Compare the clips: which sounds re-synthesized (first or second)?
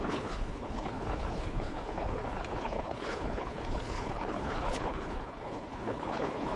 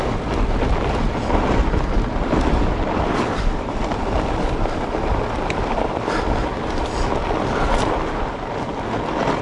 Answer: first